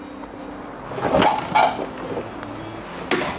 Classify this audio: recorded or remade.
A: recorded